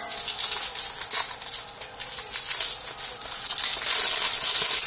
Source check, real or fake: real